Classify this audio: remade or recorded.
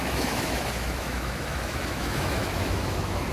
remade